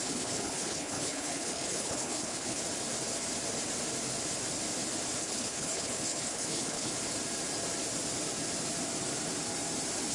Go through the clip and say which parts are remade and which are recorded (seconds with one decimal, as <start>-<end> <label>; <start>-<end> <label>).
0.0-2.6 remade; 2.6-5.2 recorded; 5.2-6.9 remade; 6.9-10.1 recorded